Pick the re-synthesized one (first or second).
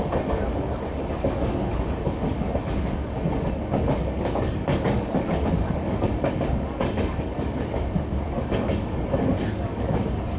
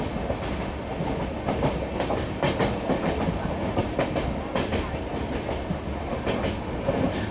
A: first